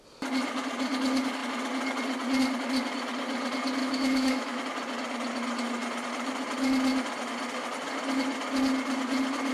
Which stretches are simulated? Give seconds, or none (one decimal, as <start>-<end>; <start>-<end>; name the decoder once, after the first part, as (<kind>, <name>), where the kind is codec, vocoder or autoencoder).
3.8-4.6 (autoencoder, DAC-VAE)